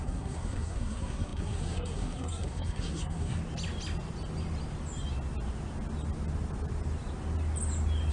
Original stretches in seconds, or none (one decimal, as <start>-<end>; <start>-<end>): 3.4-8.1